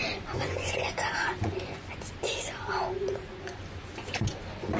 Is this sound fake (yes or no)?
yes